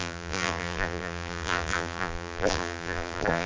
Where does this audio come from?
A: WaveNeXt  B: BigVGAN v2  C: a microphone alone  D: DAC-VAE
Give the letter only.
B